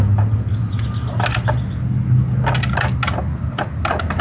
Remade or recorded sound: recorded